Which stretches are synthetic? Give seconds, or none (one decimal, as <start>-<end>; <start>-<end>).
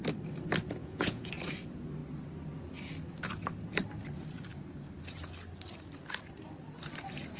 0.8-1.3